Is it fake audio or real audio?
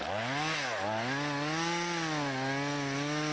real